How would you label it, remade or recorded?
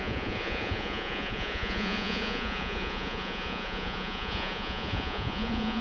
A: remade